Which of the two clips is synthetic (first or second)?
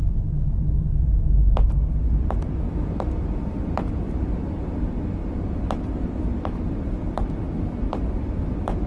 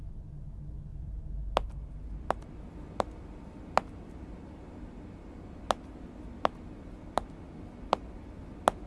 first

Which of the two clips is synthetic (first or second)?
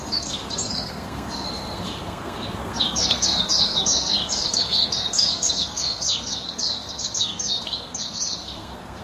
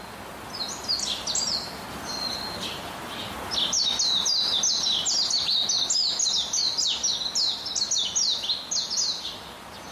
first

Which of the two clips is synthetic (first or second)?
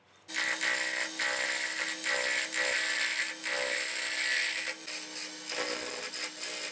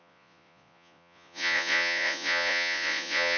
second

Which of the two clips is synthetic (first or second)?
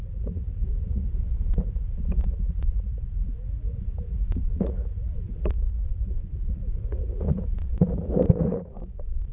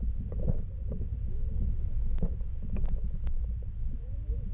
first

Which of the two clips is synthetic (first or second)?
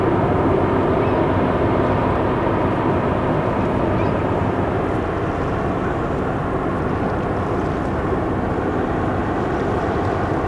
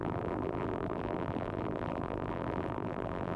second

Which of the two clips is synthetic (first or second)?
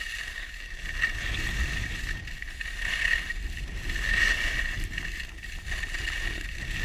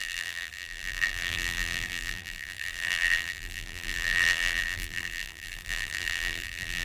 second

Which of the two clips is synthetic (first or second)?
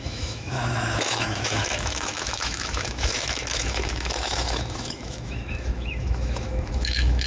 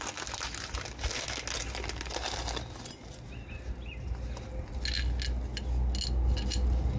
first